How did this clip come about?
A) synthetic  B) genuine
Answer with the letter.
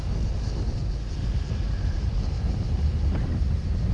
B